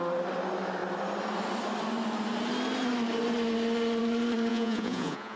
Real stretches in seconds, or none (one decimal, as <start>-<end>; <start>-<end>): 0.0-4.5